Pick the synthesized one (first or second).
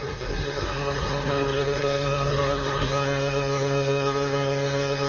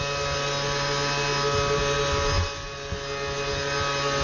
first